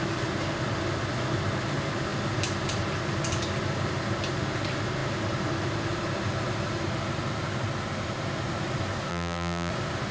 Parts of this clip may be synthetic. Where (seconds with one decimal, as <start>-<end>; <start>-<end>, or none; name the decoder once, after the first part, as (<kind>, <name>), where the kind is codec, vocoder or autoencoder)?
9.1-9.7 (vocoder, BigVGAN v2)